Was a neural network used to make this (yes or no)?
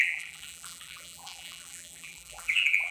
yes